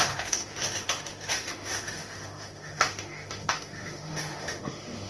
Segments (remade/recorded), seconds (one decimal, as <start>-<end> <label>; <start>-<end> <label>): 0.0-5.1 remade